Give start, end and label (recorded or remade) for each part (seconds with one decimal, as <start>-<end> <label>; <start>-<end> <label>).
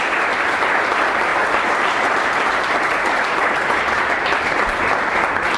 0.0-1.3 recorded; 1.3-4.0 remade; 4.0-5.6 recorded